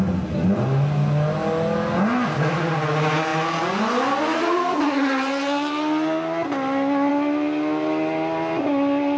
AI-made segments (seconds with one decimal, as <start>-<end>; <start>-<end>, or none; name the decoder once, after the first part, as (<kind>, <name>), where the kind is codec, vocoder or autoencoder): none